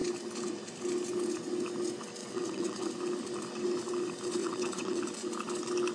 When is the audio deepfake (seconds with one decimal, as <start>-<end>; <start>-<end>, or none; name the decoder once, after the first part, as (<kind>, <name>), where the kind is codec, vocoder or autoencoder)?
2.2-2.9 (vocoder, WaveNeXt); 4.4-5.0